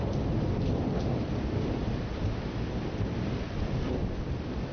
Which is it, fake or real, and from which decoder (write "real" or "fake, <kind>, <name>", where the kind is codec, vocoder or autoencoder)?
real